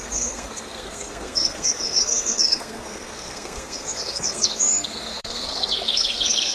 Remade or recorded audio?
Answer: remade